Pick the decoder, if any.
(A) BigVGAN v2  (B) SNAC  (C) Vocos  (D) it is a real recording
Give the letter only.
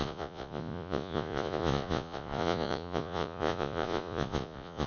C